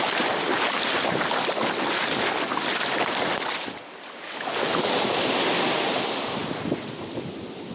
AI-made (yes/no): no